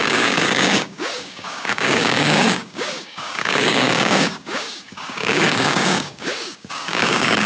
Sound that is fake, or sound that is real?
fake